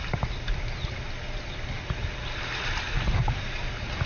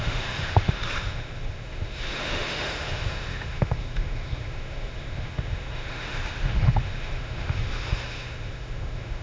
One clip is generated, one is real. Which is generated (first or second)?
second